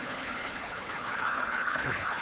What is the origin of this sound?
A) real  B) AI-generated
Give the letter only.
B